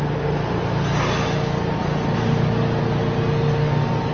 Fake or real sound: real